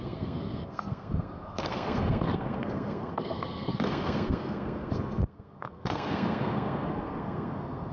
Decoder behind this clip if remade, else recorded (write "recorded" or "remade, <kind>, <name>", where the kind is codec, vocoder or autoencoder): remade, codec, SNAC